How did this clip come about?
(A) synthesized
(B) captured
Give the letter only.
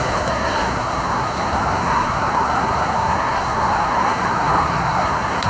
A